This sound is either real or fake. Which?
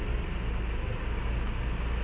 real